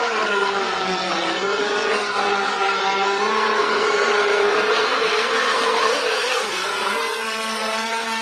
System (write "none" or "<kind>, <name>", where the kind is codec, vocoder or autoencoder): codec, SNAC